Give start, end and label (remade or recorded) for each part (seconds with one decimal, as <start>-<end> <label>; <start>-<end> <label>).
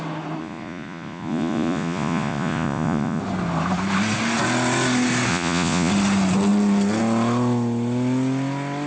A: 0.0-0.4 recorded; 0.4-3.2 remade; 3.2-5.3 recorded; 5.3-5.9 remade; 5.9-8.9 recorded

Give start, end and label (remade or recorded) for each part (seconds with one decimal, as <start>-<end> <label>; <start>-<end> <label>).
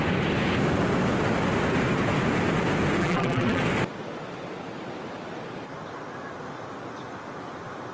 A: 0.0-3.0 recorded; 3.0-3.6 remade; 3.6-7.9 recorded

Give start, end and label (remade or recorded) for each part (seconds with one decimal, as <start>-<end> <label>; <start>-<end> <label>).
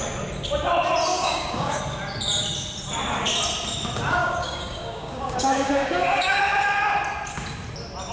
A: 0.0-1.1 recorded; 1.1-1.8 remade; 1.8-4.2 recorded; 4.2-6.4 remade; 6.4-8.1 recorded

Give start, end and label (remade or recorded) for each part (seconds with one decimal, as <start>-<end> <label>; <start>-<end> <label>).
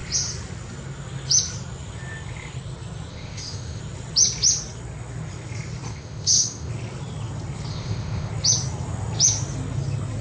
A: 0.0-3.1 recorded; 3.1-3.8 remade; 3.8-5.9 recorded; 5.9-6.7 remade; 6.7-7.7 recorded; 7.7-8.3 remade; 8.3-10.2 recorded